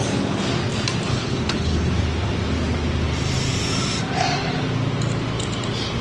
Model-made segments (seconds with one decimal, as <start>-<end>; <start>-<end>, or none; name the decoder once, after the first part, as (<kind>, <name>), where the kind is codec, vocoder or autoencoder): 1.1-1.9 (codec, HILCodec)